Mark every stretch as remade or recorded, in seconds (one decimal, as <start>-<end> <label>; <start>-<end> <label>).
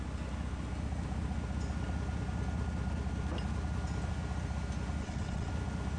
0.0-5.0 recorded; 5.0-5.5 remade; 5.5-6.0 recorded